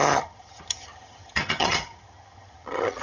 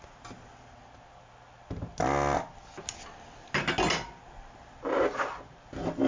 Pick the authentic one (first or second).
second